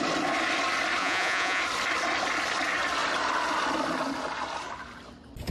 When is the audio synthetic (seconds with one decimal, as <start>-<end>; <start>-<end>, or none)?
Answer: 1.0-1.6